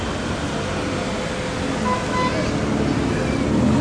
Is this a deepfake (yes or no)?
no